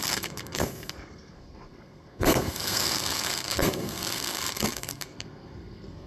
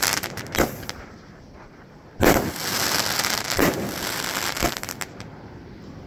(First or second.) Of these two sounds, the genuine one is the second